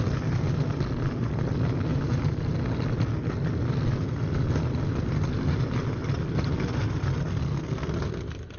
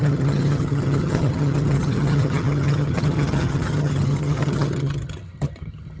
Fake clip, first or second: second